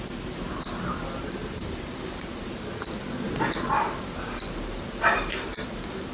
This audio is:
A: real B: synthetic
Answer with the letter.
A